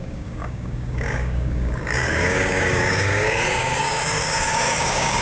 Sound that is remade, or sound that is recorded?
remade